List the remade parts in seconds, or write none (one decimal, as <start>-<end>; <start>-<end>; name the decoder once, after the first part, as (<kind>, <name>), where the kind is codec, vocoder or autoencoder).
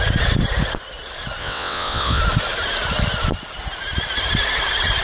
1.4-2.2 (vocoder, WaveNeXt)